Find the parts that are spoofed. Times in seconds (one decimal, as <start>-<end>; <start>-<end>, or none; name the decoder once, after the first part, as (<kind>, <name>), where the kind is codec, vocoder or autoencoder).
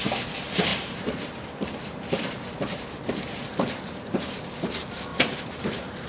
0.7-4.4 (vocoder, BigVGAN v2); 5.1-6.1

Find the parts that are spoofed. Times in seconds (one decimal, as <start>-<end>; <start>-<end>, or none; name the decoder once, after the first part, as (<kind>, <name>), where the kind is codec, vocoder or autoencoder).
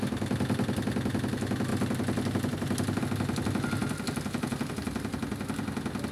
none